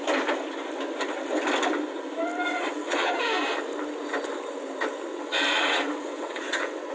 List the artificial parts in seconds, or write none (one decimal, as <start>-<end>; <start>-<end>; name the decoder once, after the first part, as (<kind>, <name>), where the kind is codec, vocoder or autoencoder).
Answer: 2.5-3.2 (vocoder, WaveNeXt); 5.1-6.9